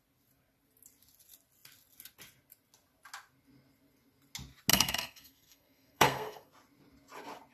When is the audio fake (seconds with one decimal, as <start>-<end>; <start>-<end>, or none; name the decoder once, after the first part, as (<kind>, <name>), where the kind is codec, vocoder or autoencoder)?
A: 4.7-6.5 (codec, SNAC)